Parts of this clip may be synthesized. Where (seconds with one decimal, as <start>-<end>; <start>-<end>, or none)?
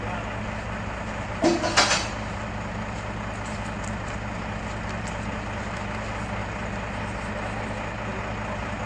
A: none